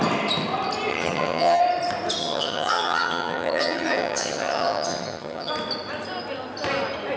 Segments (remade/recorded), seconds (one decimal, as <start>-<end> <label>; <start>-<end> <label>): 0.0-0.9 recorded; 0.9-1.6 remade; 1.6-2.2 recorded; 2.2-5.5 remade; 5.5-7.2 recorded